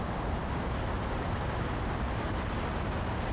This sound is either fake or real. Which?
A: fake